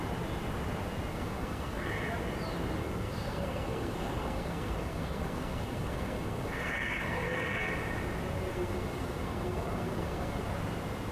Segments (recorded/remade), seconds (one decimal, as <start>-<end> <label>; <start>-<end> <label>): 0.0-1.1 recorded; 1.1-1.9 remade; 1.9-2.8 recorded; 2.8-7.7 remade; 7.7-8.5 recorded; 8.5-10.5 remade; 10.5-11.1 recorded